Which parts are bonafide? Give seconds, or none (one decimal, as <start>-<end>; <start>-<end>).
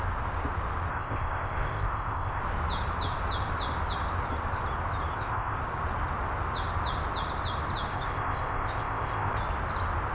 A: 0.0-0.9; 2.4-5.1; 5.6-7.9; 9.4-10.1